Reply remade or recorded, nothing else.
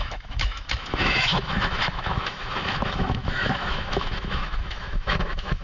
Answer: remade